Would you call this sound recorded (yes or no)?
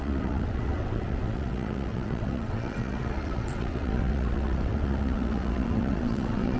no